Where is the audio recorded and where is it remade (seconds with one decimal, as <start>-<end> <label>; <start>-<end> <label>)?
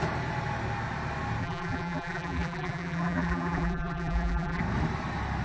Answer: 0.0-1.4 recorded; 1.4-4.6 remade; 4.6-5.4 recorded